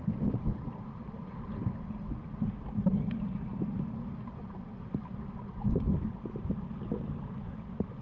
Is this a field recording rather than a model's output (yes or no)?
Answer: yes